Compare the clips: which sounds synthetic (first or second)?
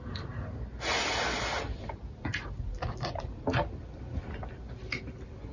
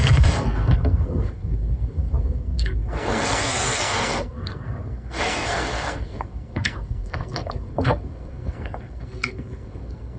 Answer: second